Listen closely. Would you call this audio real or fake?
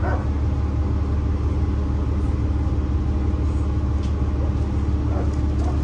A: real